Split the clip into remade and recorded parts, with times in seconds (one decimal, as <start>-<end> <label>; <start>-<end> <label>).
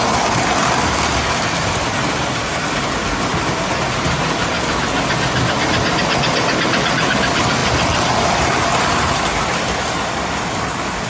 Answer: 0.0-11.1 recorded